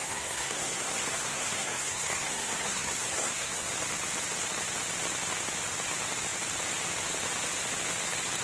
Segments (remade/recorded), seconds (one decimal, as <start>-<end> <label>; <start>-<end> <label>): 0.0-3.7 remade; 3.7-8.4 recorded